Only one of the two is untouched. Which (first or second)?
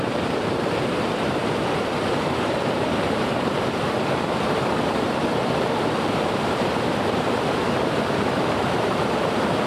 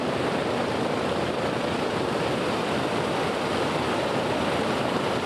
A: second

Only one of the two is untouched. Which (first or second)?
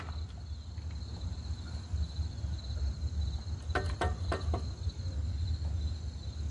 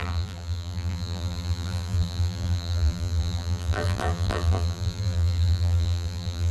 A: first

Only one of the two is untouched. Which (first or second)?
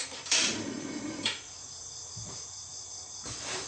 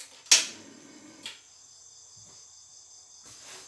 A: second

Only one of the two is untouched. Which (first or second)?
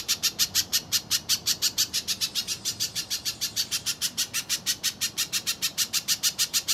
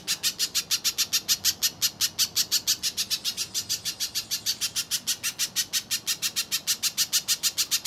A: second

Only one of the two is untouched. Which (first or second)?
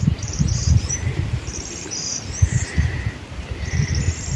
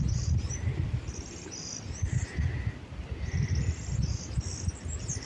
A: second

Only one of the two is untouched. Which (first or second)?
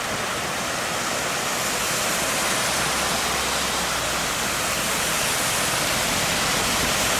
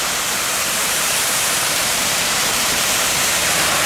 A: first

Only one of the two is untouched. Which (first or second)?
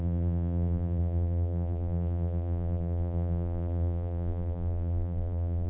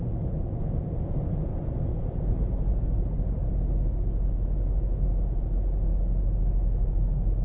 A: second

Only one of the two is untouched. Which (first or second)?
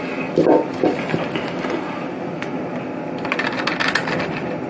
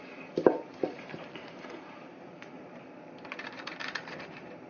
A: first